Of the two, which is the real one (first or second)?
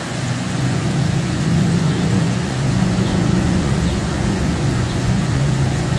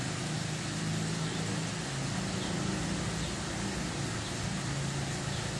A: second